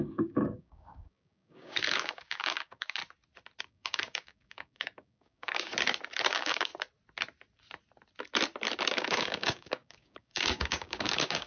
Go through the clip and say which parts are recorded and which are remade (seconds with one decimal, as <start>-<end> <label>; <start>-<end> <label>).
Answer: 0.0-3.0 remade; 3.0-3.6 recorded; 3.6-5.7 remade; 5.7-6.3 recorded; 6.3-6.7 remade; 6.7-8.9 recorded; 8.9-11.5 remade